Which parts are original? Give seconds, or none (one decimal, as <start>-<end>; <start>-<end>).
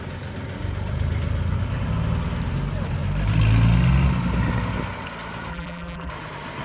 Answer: 0.0-5.5; 6.1-6.6